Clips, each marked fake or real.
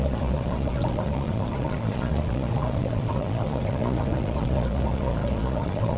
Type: fake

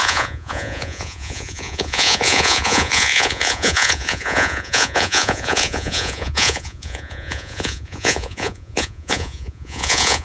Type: fake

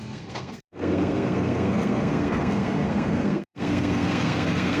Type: fake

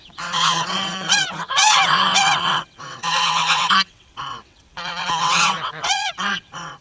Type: fake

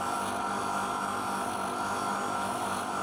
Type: real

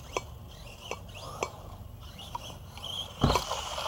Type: real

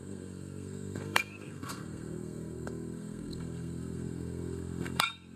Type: fake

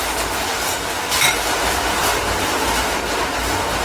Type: real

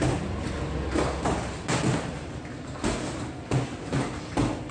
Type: real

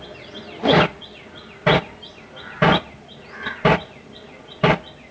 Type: real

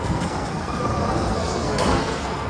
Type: fake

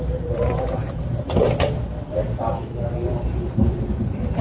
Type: real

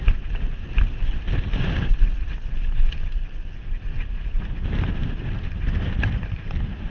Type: real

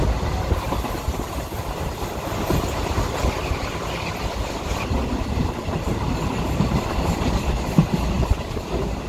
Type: real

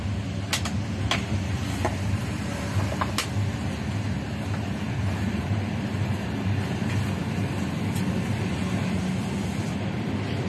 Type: real